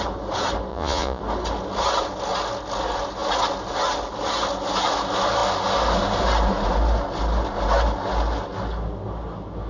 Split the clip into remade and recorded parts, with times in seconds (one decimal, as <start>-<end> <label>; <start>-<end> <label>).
0.0-0.7 recorded; 0.7-1.2 remade; 1.2-9.7 recorded